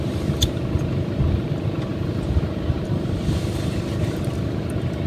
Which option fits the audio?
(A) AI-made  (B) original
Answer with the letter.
A